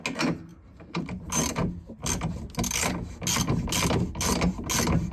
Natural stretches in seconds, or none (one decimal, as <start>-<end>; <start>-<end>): 0.0-0.5; 1.2-5.1